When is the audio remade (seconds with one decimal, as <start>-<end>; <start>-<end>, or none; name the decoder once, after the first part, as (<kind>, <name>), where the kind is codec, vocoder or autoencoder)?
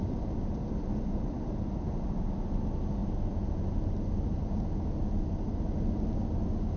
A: none